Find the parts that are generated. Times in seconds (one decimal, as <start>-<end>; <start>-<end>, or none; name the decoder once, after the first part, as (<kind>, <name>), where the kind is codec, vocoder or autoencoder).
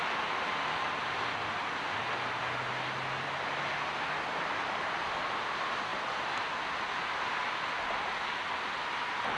none